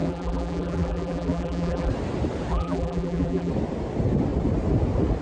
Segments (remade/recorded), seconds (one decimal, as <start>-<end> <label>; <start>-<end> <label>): 0.0-1.9 remade; 1.9-2.5 recorded; 2.5-3.5 remade; 3.5-5.2 recorded